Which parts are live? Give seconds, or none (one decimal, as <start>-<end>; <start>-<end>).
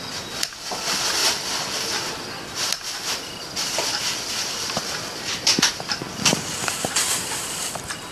0.0-8.1